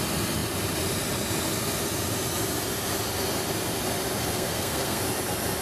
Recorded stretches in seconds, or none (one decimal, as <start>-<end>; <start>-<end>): 0.0-4.2; 5.0-5.6